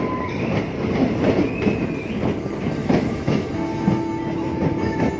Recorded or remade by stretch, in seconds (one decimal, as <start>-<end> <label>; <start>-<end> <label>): 0.0-2.8 recorded; 2.8-3.5 remade; 3.5-5.2 recorded